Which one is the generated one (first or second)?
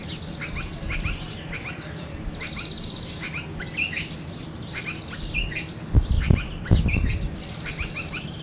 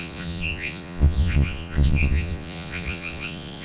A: second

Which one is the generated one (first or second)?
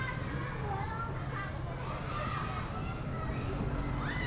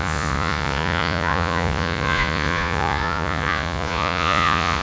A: second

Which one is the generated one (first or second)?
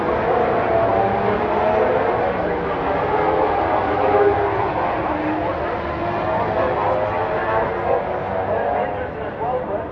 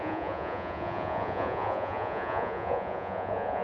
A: second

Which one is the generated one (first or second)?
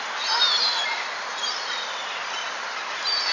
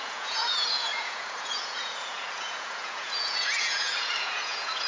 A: second